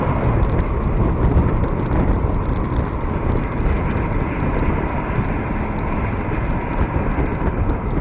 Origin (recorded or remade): recorded